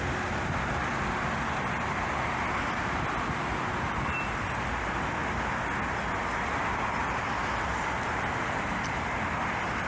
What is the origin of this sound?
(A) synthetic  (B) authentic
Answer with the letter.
B